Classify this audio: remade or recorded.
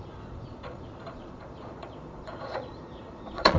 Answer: remade